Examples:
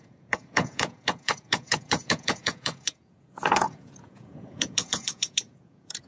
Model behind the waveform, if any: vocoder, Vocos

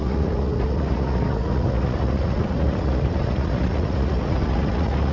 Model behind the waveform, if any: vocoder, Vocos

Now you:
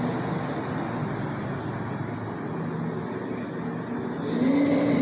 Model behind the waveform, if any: none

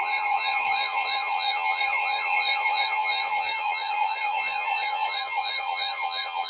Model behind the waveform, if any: vocoder, Vocos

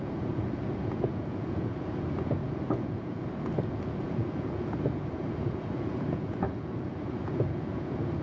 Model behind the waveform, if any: vocoder, Vocos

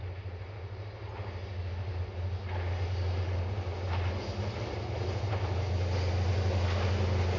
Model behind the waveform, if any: none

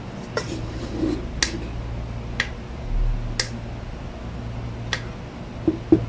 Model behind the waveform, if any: none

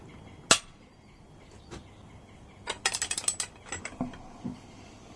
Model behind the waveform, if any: none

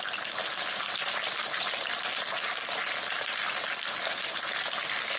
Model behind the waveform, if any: none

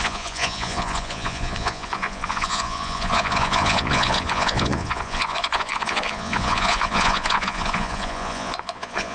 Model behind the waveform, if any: vocoder, Vocos